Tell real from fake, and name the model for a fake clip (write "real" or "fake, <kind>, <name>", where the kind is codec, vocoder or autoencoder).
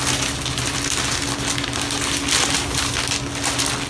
real